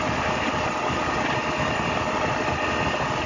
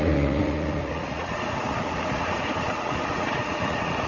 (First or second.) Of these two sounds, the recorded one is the first